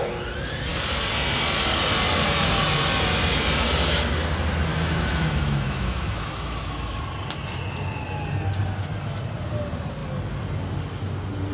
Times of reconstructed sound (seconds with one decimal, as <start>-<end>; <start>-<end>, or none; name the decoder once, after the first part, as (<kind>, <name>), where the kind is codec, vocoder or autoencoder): 4.7-7.0 (autoencoder, DAC-VAE)